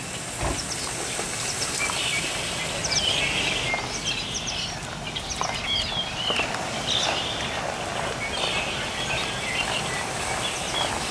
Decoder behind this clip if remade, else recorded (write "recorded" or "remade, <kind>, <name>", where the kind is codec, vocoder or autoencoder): recorded